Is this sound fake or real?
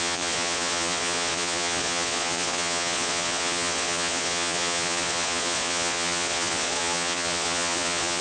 fake